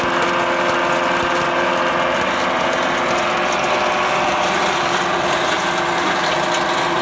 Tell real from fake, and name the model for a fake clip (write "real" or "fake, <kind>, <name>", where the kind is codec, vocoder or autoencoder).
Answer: real